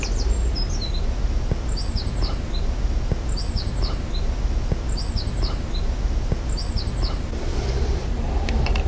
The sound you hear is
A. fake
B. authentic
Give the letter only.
B